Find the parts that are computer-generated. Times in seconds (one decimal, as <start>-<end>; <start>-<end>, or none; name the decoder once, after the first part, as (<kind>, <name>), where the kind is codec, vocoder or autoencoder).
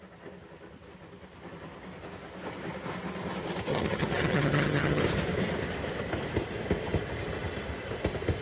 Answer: 3.7-5.0 (vocoder, HiFi-GAN)